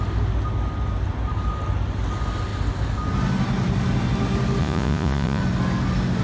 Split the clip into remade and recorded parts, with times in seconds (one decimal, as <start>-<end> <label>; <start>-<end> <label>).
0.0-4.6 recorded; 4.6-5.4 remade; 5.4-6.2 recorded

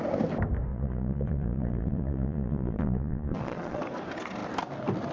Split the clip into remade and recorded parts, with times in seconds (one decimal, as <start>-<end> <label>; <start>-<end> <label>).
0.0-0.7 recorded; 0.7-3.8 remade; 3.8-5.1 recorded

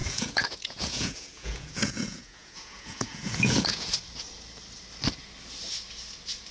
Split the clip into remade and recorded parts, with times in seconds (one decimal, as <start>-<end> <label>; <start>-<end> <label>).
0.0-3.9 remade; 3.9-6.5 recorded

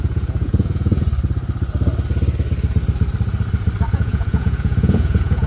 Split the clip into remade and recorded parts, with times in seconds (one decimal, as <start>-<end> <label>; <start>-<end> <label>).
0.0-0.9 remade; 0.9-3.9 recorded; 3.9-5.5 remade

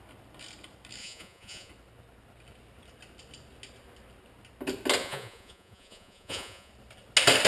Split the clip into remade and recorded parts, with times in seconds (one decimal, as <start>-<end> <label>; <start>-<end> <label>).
0.0-1.0 recorded; 1.0-1.7 remade; 1.7-5.0 recorded; 5.0-6.7 remade; 6.7-7.5 recorded

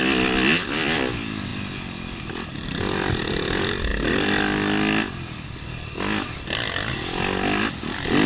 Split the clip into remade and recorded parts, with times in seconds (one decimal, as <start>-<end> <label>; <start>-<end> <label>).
0.0-8.3 recorded

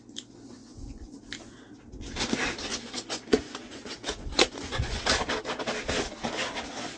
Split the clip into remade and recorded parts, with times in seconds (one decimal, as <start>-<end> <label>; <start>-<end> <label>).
0.0-0.6 recorded; 0.6-1.3 remade; 1.3-2.7 recorded; 2.7-5.0 remade; 5.0-7.0 recorded

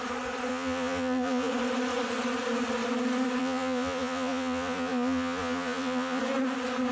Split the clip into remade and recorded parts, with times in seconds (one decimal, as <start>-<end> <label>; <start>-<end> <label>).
0.0-0.5 recorded; 0.5-1.5 remade; 1.5-3.4 recorded; 3.4-6.2 remade; 6.2-6.9 recorded